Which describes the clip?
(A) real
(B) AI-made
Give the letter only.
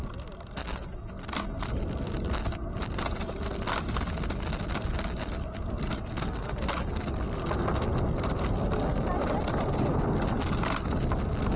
A